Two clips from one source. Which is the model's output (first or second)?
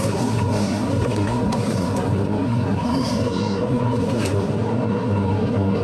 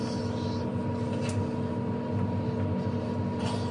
first